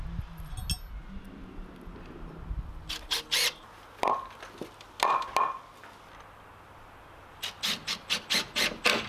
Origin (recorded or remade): recorded